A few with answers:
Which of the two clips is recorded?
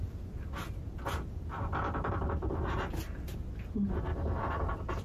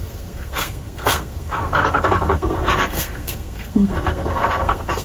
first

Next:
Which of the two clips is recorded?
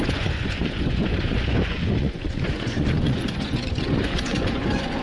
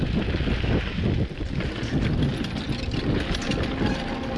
second